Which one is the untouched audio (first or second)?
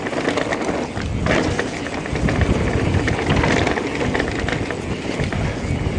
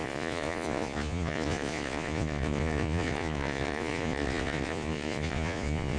first